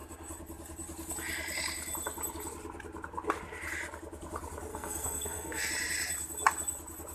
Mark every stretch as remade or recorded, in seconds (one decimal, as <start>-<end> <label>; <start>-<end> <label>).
0.0-4.7 recorded; 4.7-5.7 remade; 5.7-7.1 recorded